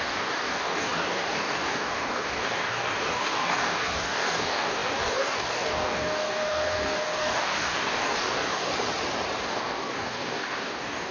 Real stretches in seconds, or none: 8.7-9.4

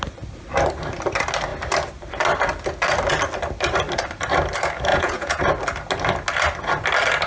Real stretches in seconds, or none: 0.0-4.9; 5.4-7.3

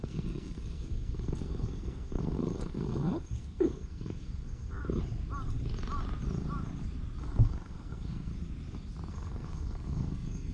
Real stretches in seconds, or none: 4.8-7.2; 8.3-9.1